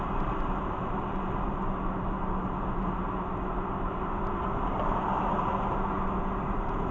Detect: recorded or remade recorded